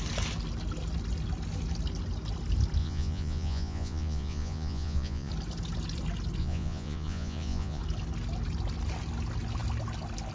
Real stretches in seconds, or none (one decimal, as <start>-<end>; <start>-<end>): 0.0-2.8; 5.3-6.4; 7.8-10.3